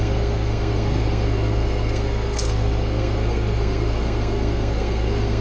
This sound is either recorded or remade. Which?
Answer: remade